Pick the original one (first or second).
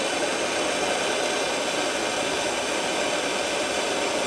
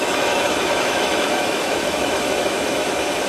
first